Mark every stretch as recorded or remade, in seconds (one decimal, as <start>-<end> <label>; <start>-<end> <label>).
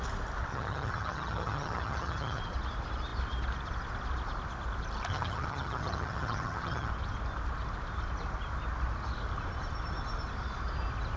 0.0-0.5 recorded; 0.5-2.4 remade; 2.4-5.1 recorded; 5.1-6.9 remade; 6.9-11.2 recorded